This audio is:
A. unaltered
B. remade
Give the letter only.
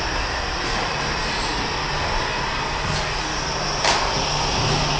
A